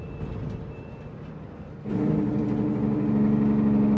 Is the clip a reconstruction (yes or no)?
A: no